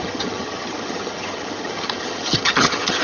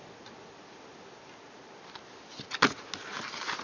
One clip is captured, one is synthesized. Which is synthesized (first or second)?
first